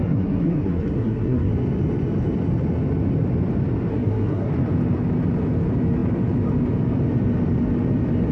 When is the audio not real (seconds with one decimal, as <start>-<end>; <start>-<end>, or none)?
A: 0.0-1.5; 3.9-4.5